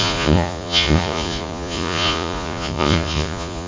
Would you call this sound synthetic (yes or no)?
yes